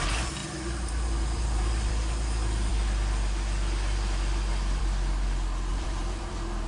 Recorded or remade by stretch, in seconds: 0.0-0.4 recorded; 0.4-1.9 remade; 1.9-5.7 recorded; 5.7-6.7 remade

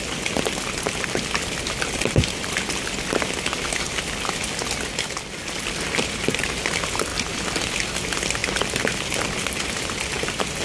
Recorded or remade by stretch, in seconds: 0.0-10.6 recorded

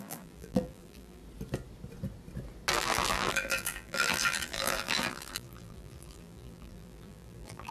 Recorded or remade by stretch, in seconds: 0.0-1.2 remade; 1.2-2.7 recorded; 2.7-7.7 remade

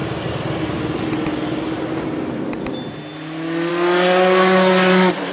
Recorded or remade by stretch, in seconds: 0.0-5.3 recorded

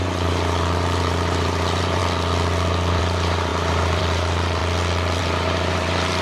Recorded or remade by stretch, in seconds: 0.0-2.0 remade; 2.0-3.0 recorded; 3.0-4.6 remade; 4.6-5.2 recorded; 5.2-6.2 remade